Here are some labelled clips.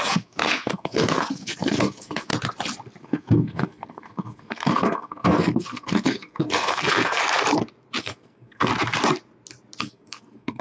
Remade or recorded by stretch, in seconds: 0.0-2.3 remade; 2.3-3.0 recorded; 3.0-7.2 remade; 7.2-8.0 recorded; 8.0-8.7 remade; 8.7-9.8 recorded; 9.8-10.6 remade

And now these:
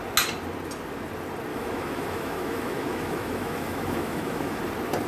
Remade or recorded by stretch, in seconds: 0.0-1.5 recorded; 1.5-4.6 remade; 4.6-5.1 recorded

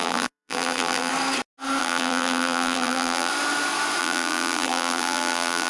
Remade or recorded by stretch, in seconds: 0.0-1.1 remade; 1.1-1.8 recorded; 1.8-3.3 remade; 3.3-4.0 recorded; 4.0-5.7 remade

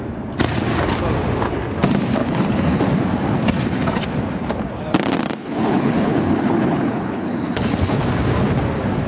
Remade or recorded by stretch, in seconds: 0.0-2.2 recorded; 2.2-2.8 remade; 2.8-5.4 recorded; 5.4-8.0 remade; 8.0-9.1 recorded

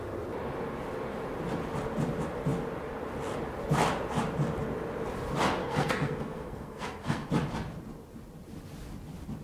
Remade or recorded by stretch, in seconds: 0.0-5.6 recorded; 5.6-7.3 remade; 7.3-9.4 recorded

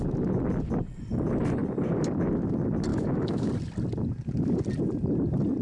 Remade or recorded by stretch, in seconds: 0.0-2.9 recorded; 2.9-3.5 remade; 3.5-5.6 recorded

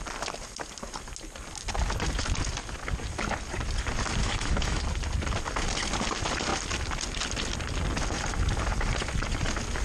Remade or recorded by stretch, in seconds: 0.0-4.2 recorded; 4.2-4.8 remade; 4.8-9.8 recorded